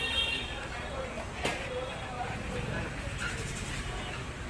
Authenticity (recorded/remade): remade